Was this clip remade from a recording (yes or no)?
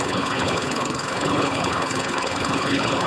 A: yes